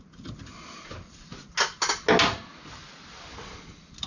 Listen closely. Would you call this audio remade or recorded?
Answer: recorded